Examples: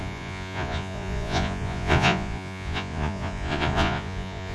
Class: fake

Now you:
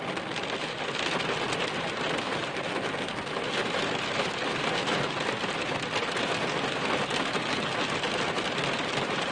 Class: real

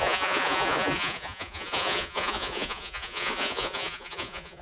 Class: fake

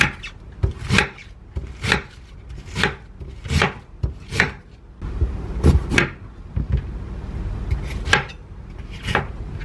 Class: real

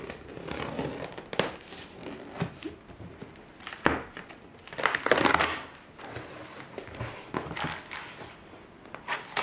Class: real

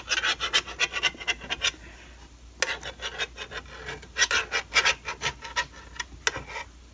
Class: real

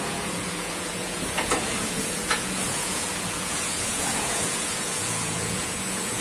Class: fake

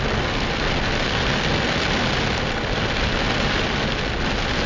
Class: real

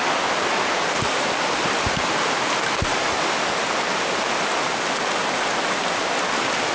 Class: real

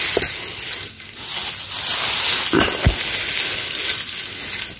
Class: real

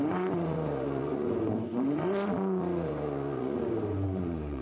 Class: fake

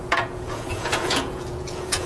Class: fake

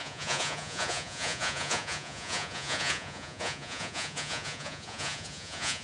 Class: fake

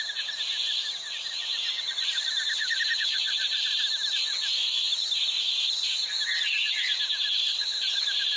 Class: real